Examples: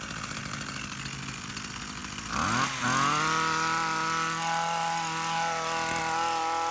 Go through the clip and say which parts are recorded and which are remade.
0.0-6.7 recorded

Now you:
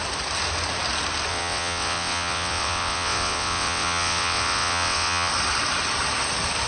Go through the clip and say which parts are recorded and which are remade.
0.0-1.3 recorded; 1.3-5.3 remade; 5.3-6.7 recorded

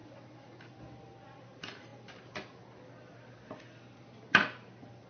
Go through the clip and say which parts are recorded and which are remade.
0.0-5.1 recorded